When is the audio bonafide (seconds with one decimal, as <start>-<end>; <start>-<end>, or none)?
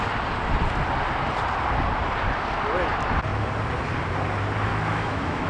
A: 0.0-4.7